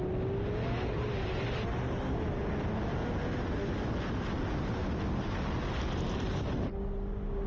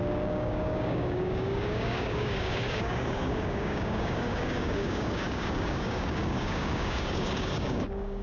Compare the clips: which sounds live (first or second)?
first